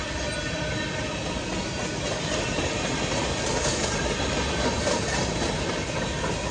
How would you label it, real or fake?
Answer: real